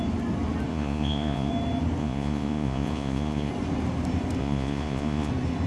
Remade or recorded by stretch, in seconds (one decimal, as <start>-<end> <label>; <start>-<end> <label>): 0.0-0.7 recorded; 0.7-1.5 remade; 1.5-2.0 recorded; 2.0-3.5 remade; 3.5-4.4 recorded; 4.4-5.3 remade; 5.3-5.7 recorded